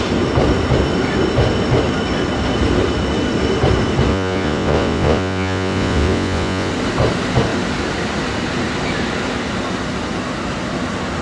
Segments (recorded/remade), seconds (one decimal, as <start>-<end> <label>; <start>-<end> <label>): 0.0-4.1 recorded; 4.1-6.7 remade; 6.7-11.2 recorded